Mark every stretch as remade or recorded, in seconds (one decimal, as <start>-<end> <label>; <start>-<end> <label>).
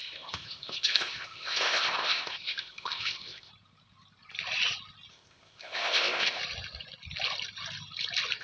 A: 0.0-3.5 remade; 3.5-5.1 recorded; 5.1-6.4 remade; 6.4-8.4 recorded